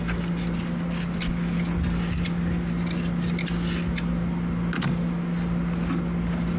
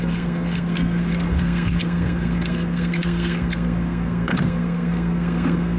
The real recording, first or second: first